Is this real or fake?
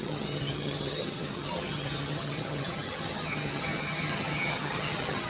fake